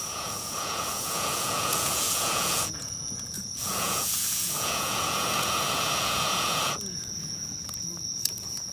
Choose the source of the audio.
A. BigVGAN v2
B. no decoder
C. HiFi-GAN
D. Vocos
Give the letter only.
D